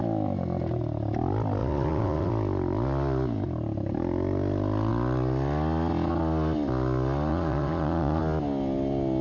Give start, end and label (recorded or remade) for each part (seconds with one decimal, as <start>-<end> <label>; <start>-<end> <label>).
0.0-1.6 recorded; 1.6-2.3 remade; 2.3-7.3 recorded; 7.3-8.2 remade; 8.2-9.2 recorded